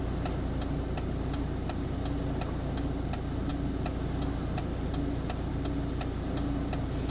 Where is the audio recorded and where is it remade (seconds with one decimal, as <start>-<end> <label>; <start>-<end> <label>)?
0.0-7.1 recorded